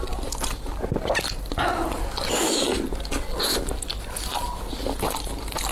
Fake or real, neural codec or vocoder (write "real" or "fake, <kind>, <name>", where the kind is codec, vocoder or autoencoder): real